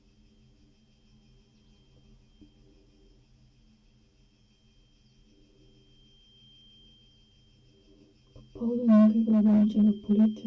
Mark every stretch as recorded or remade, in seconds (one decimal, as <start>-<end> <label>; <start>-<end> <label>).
0.0-9.3 recorded; 9.3-10.1 remade; 10.1-10.5 recorded

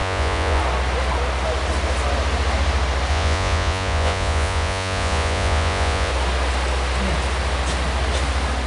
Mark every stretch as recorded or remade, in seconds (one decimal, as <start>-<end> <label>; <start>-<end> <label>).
0.0-0.6 remade; 0.6-3.1 recorded; 3.1-6.1 remade; 6.1-8.7 recorded

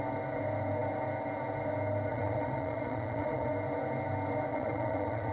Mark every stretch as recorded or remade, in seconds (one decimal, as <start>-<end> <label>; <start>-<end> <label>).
0.0-2.1 recorded; 2.1-3.5 remade; 3.5-4.5 recorded; 4.5-5.3 remade

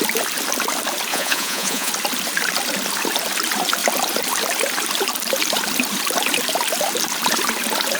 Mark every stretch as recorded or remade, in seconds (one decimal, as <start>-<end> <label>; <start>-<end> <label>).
0.0-1.1 recorded; 1.1-1.9 remade; 1.9-8.0 recorded

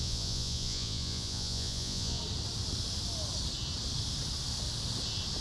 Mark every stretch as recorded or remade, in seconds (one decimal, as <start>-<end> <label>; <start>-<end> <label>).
0.0-2.2 remade; 2.2-5.4 recorded

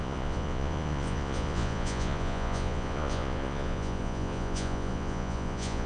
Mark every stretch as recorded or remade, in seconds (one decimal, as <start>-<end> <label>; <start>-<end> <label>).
0.0-5.9 remade